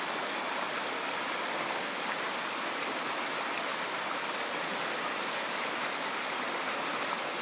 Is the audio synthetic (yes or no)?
no